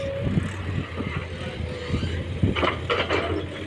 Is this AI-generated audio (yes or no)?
no